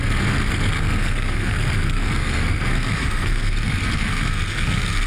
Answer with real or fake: fake